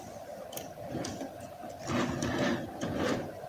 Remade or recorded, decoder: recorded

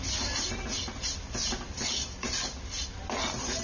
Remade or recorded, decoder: recorded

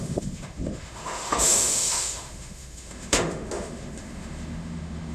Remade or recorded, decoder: remade, autoencoder, DAC-VAE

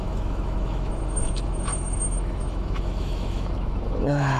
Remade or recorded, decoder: remade, autoencoder, DAC-VAE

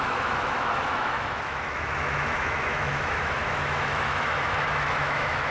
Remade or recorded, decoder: remade, autoencoder, DAC-VAE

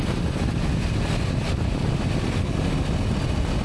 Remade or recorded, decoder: recorded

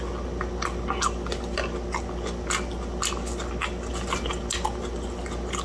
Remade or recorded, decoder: recorded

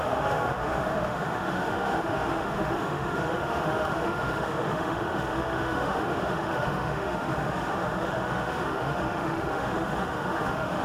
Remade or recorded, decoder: remade, autoencoder, DAC-VAE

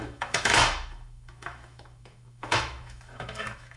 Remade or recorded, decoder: remade, autoencoder, DAC-VAE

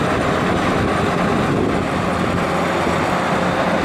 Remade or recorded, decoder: recorded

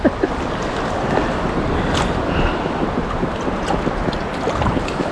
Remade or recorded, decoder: recorded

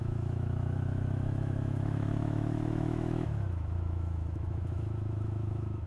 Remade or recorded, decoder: remade, autoencoder, DAC-VAE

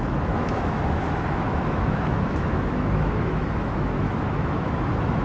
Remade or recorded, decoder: remade, autoencoder, DAC-VAE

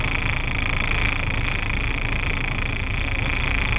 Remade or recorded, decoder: recorded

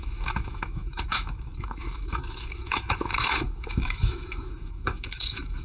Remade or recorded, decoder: remade, autoencoder, DAC-VAE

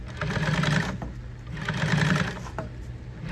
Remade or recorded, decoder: recorded